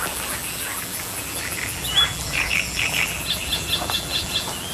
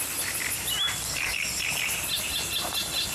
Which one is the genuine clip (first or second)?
second